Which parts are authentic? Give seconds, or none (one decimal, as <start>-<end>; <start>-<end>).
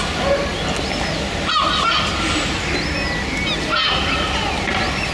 0.0-5.1